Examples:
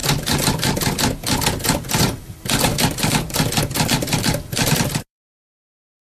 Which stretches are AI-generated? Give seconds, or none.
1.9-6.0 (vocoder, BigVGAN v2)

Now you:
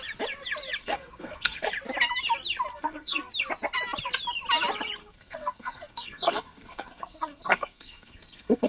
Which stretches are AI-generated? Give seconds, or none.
0.8-1.7 (codec, SNAC); 2.7-3.3; 5.0-8.7

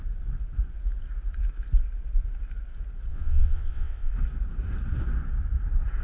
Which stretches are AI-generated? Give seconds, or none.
3.1-4.1 (vocoder, WaveNeXt)

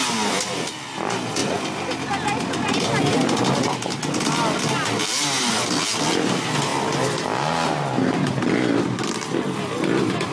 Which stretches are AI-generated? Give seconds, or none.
none

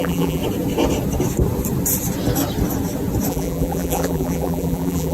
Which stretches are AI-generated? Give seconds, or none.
0.0-0.4 (vocoder, BigVGAN v2); 3.3-5.1

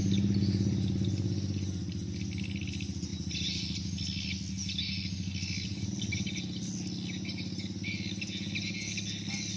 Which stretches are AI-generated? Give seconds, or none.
none

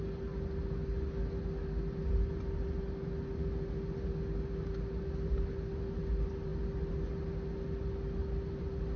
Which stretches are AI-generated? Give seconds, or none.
none